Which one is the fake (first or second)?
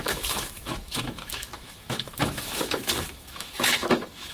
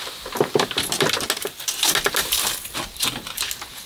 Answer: first